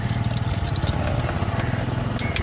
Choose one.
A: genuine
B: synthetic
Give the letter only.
A